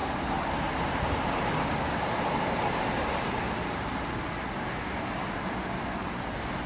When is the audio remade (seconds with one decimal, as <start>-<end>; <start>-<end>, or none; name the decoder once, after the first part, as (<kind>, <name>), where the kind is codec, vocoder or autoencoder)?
0.0-4.0 (vocoder, BigVGAN v2)